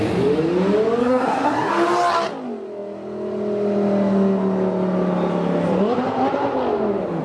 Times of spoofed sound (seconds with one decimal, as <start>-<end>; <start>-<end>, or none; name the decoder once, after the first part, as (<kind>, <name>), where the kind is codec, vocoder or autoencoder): 1.0-1.7 (codec, SNAC)